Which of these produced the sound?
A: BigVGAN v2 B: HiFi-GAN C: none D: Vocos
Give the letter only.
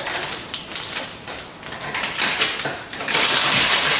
A